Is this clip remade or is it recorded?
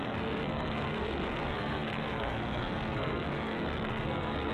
remade